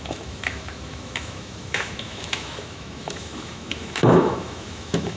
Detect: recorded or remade remade